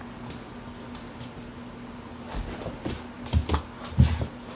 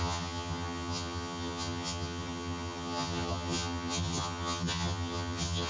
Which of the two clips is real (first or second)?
first